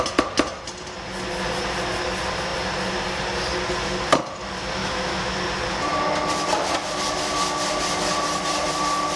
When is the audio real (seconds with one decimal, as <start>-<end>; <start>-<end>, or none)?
0.0-4.8; 5.4-9.2